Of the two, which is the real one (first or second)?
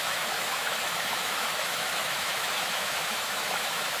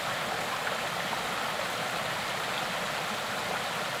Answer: second